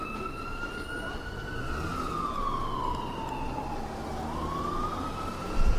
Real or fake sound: real